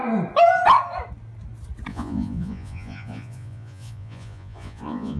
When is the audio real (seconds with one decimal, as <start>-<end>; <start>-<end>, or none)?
0.0-1.9